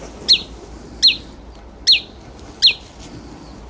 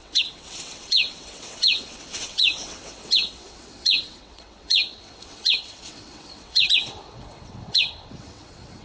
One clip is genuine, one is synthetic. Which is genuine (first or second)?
first